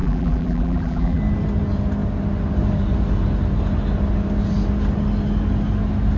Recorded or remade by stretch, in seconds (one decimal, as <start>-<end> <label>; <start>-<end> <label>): 0.0-1.2 remade; 1.2-6.2 recorded

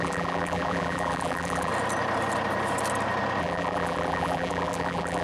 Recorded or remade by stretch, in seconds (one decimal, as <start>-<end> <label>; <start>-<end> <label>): 0.0-1.7 remade; 1.7-3.4 recorded; 3.4-5.2 remade

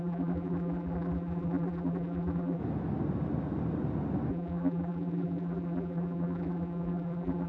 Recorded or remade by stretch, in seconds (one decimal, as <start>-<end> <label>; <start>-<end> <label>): 0.0-2.6 remade; 2.6-4.3 recorded; 4.3-7.5 remade

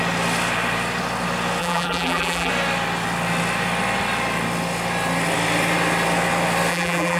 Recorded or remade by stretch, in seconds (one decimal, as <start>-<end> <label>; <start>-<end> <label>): 0.0-1.6 recorded; 1.6-2.5 remade; 2.5-6.7 recorded; 6.7-7.2 remade

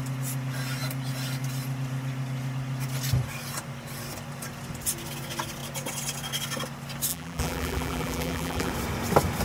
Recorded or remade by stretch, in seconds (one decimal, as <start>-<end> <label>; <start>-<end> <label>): 0.0-7.1 recorded; 7.1-8.7 remade; 8.7-9.4 recorded